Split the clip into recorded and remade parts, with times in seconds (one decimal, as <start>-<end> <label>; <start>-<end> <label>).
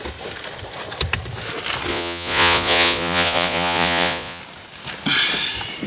0.0-1.9 recorded; 1.9-4.4 remade; 4.4-5.9 recorded